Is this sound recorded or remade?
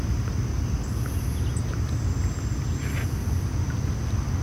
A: recorded